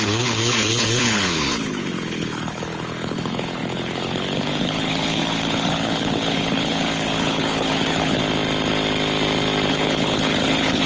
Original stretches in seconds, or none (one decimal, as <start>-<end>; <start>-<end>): 8.2-9.7